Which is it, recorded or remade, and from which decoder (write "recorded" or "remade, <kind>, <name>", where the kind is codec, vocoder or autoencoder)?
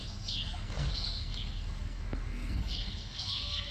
remade, codec, SNAC